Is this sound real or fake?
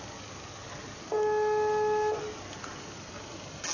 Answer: real